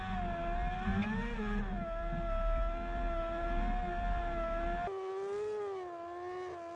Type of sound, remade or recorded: recorded